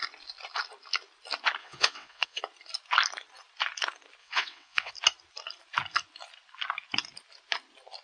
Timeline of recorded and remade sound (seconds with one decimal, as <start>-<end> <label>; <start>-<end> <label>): 0.0-1.6 recorded; 1.6-2.4 remade; 2.4-4.2 recorded; 4.2-4.9 remade; 4.9-8.0 recorded